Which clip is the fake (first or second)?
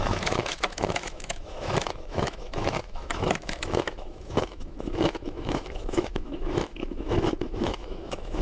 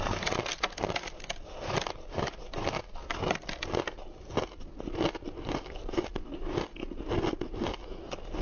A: first